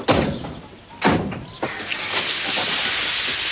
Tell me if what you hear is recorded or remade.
recorded